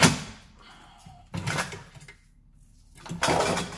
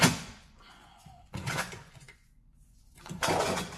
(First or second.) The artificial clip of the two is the second